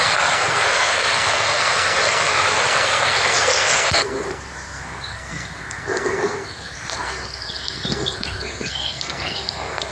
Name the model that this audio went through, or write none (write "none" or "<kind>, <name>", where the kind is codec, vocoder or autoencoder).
codec, SNAC